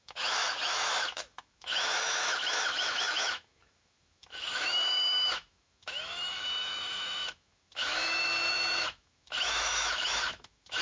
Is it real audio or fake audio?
fake